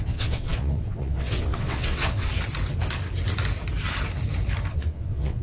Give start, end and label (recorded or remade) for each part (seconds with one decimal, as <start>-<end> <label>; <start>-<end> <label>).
0.0-2.3 remade; 2.3-4.7 recorded; 4.7-5.4 remade